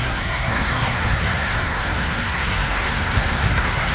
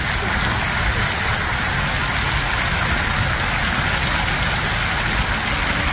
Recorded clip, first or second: second